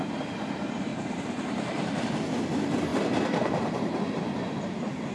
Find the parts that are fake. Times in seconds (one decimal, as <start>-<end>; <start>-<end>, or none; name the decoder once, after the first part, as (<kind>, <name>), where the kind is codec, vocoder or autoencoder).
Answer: 0.9-2.1 (vocoder, BigVGAN v2); 2.9-5.1